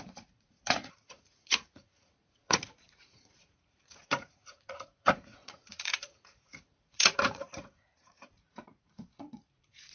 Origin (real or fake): fake